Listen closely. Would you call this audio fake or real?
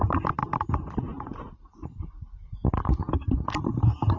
real